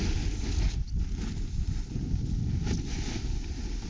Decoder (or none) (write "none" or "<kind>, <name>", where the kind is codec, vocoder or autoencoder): none